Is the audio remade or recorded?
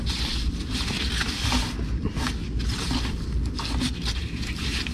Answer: recorded